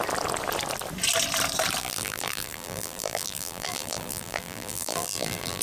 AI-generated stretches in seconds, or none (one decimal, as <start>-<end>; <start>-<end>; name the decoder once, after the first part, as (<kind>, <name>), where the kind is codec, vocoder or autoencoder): 1.8-5.6 (vocoder, BigVGAN v2)